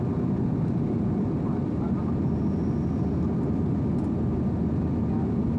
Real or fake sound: real